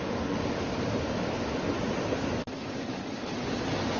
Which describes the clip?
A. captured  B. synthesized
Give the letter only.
A